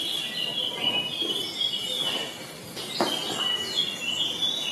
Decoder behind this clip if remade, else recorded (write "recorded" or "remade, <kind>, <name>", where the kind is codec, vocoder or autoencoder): recorded